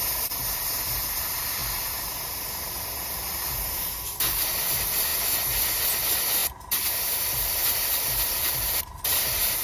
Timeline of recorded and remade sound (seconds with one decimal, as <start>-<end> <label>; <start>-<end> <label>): 0.0-1.6 remade; 1.6-4.1 recorded; 4.1-5.1 remade; 5.1-6.0 recorded; 6.0-9.6 remade